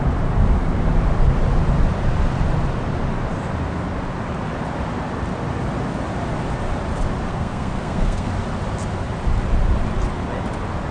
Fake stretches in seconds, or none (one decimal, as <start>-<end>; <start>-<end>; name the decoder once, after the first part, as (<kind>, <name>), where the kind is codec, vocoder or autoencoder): 7.3-8.3 (codec, SNAC)